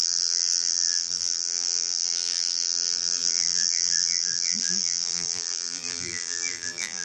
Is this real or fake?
fake